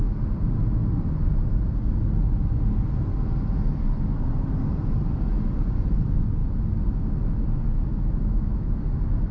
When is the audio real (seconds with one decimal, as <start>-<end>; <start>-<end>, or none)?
0.0-7.9; 8.8-9.3